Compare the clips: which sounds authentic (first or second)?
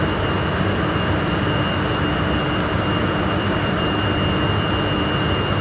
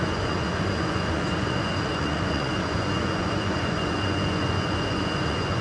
first